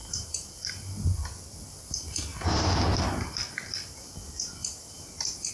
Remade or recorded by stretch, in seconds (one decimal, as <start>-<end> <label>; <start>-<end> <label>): 0.0-0.5 remade; 0.5-4.6 recorded; 4.6-5.5 remade